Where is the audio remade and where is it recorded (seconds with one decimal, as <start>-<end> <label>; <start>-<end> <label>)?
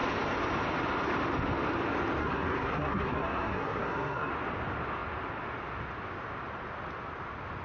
0.0-2.2 recorded; 2.2-4.3 remade; 4.3-7.6 recorded